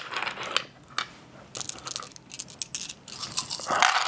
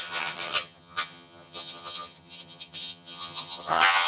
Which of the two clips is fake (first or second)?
second